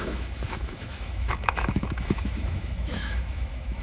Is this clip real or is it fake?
fake